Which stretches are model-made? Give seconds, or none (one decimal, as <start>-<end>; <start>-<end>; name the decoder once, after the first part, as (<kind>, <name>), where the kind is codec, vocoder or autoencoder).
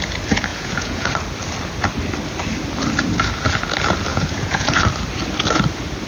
0.5-1.1 (vocoder, Vocos); 4.1-4.7